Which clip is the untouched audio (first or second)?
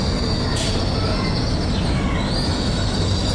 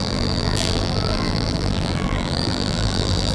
first